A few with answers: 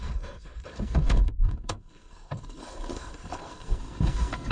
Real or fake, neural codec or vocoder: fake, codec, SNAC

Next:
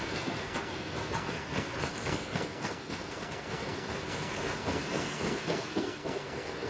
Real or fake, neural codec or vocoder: fake, codec, SNAC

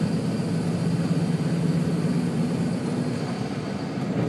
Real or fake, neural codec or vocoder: real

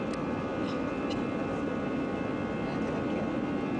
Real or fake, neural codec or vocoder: real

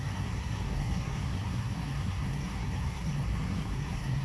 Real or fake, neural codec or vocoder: fake, codec, SNAC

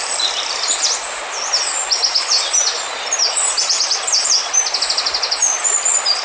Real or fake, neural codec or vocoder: real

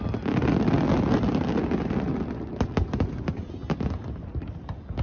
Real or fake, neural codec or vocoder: real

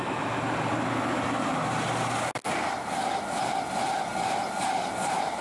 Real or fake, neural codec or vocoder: real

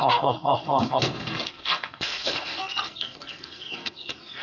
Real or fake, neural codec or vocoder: fake, codec, SNAC